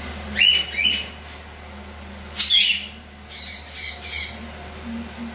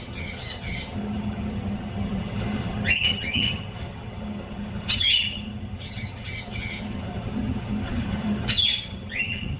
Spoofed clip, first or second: second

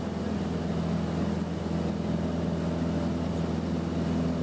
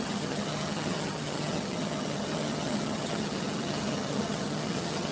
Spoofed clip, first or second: second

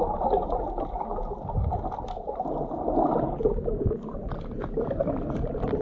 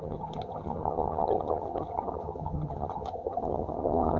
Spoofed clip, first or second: second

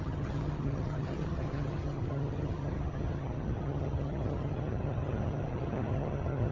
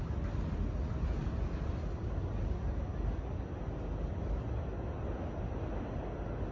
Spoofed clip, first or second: first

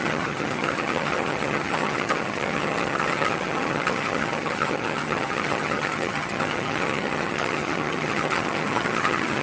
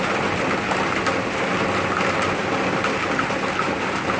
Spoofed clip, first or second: first